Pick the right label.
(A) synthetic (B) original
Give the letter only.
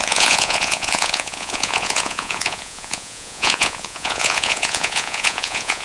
A